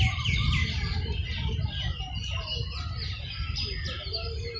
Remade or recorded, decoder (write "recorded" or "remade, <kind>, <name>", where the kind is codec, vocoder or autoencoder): recorded